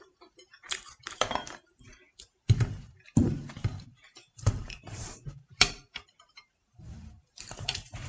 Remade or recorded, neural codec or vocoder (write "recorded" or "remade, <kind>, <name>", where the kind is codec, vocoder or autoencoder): remade, vocoder, BigVGAN v2